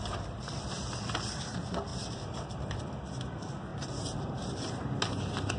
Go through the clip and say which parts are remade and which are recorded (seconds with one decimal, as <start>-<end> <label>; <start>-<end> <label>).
0.0-1.9 recorded; 1.9-2.8 remade; 2.8-3.7 recorded; 3.7-4.3 remade; 4.3-5.6 recorded